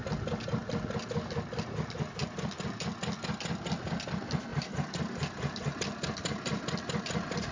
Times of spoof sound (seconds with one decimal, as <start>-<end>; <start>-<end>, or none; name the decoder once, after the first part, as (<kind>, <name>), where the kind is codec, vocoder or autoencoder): 4.5-5.8 (vocoder, BigVGAN v2)